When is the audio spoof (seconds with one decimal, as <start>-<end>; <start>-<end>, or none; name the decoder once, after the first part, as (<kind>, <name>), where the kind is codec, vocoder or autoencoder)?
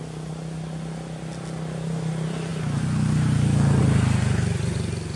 none